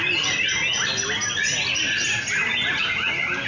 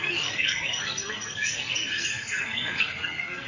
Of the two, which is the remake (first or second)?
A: second